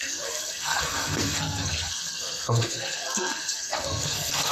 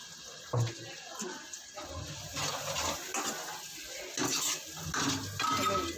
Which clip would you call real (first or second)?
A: second